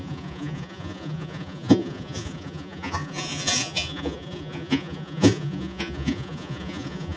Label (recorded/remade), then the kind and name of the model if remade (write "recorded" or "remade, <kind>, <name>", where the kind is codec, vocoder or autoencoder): remade, vocoder, Vocos